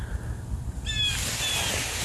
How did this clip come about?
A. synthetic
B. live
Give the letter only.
B